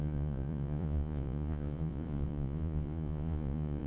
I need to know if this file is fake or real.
fake